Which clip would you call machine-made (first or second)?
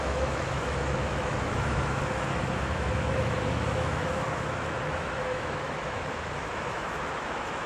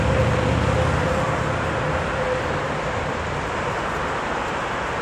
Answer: first